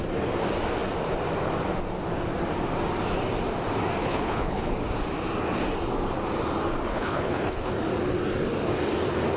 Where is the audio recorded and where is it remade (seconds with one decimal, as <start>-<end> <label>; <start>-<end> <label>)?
0.0-4.0 recorded; 4.0-4.7 remade; 4.7-6.9 recorded; 6.9-7.7 remade; 7.7-9.4 recorded